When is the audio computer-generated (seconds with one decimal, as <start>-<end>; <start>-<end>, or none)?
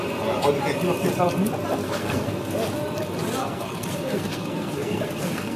1.8-2.3; 3.4-5.6